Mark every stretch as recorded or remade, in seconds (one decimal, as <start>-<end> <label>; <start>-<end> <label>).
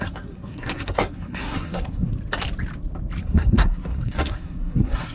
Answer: 0.0-2.1 remade; 2.1-3.2 recorded; 3.2-5.1 remade